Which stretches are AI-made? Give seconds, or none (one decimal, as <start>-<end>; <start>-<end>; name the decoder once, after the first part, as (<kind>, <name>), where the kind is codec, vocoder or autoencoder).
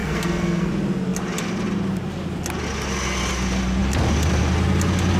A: 0.0-0.7 (codec, SNAC)